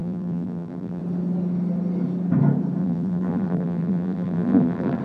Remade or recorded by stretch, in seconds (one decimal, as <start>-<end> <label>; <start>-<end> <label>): 0.0-1.0 remade; 1.0-2.8 recorded; 2.8-5.0 remade